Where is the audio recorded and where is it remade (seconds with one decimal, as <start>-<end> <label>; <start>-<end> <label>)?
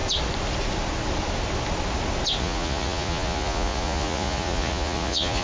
0.0-2.4 recorded; 2.4-5.4 remade